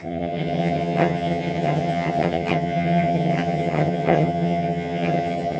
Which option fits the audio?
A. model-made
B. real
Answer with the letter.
A